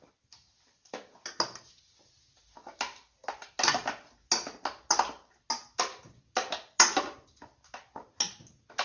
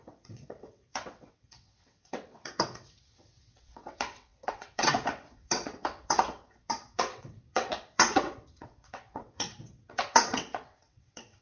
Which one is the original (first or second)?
first